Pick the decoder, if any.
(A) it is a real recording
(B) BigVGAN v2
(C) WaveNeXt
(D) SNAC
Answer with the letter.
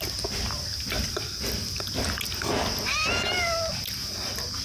A